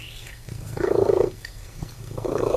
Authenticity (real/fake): fake